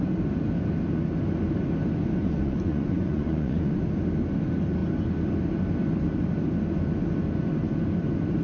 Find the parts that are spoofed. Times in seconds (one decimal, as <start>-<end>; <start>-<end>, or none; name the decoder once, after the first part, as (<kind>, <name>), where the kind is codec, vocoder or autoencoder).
2.2-3.8 (vocoder, Vocos)